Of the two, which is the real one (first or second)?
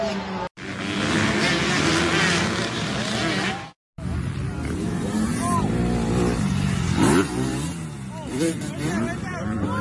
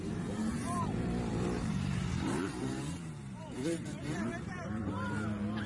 first